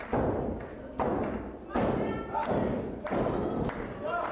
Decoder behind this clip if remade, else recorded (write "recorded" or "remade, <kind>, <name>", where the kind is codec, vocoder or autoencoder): remade, vocoder, BigVGAN v2